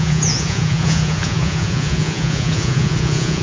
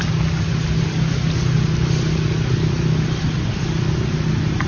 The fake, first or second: first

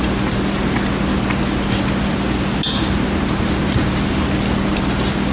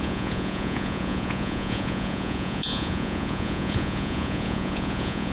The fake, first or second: second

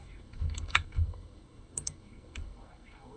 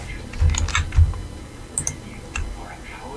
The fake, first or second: first